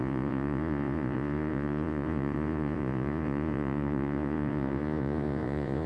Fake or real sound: fake